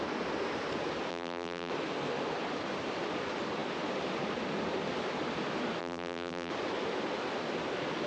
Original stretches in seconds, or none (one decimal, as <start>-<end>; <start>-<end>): 0.0-1.1; 1.7-5.8; 6.5-8.1